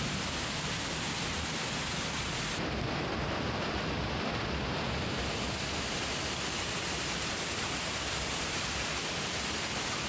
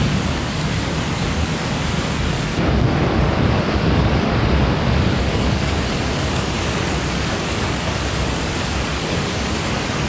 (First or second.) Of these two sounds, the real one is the first